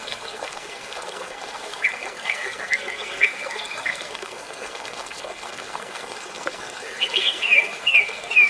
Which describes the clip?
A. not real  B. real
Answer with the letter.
A